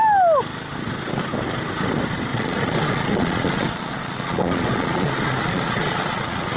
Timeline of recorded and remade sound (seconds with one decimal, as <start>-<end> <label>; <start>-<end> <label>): 0.0-2.3 recorded; 2.3-6.6 remade